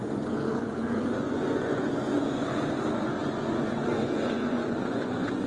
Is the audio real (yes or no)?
no